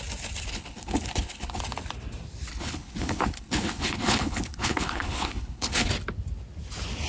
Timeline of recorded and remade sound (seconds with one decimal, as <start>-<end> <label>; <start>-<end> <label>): 0.0-0.5 recorded; 0.5-1.6 remade; 1.6-2.5 recorded; 2.5-5.9 remade; 5.9-7.1 recorded